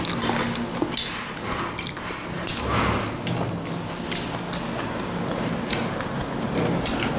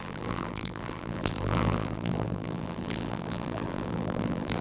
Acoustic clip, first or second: first